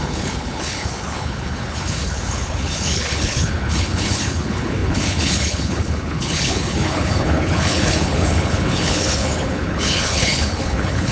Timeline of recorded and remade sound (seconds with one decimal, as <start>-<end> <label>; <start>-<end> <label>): 0.0-11.1 remade